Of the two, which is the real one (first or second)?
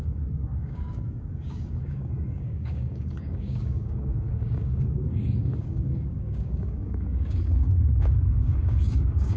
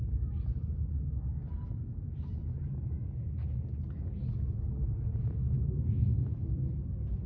second